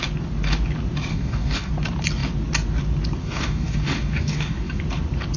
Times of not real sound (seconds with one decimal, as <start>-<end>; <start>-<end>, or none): 1.1-1.7; 3.2-4.8

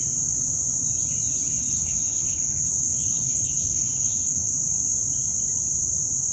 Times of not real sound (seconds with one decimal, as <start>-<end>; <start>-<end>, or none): 1.6-4.5

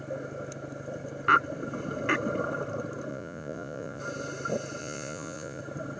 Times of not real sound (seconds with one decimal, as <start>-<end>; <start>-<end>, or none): 3.1-4.0; 4.8-5.6

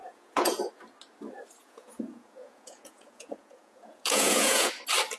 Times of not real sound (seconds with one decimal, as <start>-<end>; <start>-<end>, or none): 0.0-0.7; 1.6-4.7

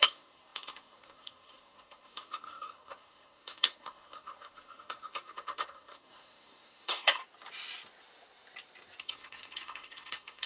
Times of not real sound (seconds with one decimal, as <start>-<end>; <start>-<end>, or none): 0.0-7.2; 9.0-10.5

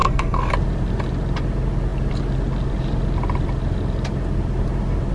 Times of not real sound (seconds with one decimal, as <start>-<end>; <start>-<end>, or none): 0.0-0.5

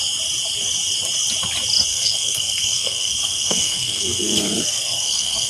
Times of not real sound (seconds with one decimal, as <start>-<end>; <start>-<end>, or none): 1.9-5.5